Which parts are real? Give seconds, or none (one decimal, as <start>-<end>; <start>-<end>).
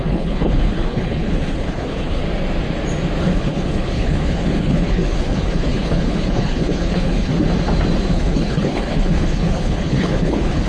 2.2-3.2; 7.3-8.1